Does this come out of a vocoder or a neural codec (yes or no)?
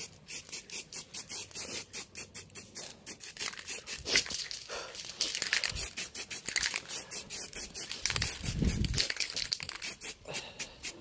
no